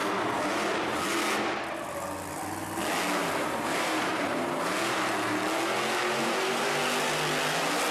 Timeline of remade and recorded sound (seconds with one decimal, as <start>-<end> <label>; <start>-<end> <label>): 0.0-4.1 recorded; 4.1-4.6 remade; 4.6-7.9 recorded